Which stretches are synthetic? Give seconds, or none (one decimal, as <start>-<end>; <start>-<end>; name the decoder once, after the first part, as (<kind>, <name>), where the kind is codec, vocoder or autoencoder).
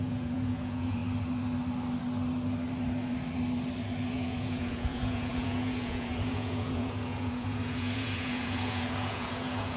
0.0-1.0 (vocoder, Vocos); 4.1-9.8